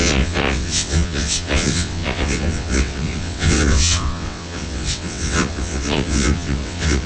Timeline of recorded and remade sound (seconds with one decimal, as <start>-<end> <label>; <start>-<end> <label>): 0.0-7.1 remade